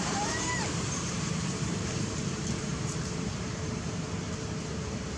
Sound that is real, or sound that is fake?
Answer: fake